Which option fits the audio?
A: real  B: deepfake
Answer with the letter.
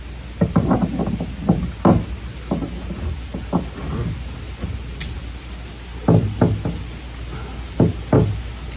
A